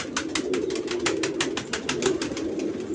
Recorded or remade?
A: recorded